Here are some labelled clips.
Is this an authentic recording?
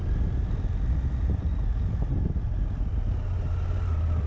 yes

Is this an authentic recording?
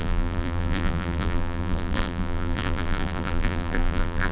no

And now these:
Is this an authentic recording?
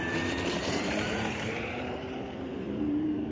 no